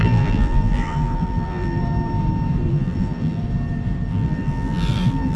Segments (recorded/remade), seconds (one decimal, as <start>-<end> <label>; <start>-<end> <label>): 0.0-1.8 remade; 1.8-2.7 recorded; 2.7-3.4 remade; 3.4-4.1 recorded; 4.1-5.4 remade